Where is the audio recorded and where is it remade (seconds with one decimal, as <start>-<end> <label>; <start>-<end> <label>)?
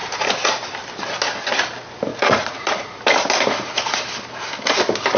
0.0-2.1 recorded; 2.1-2.7 remade; 2.7-5.2 recorded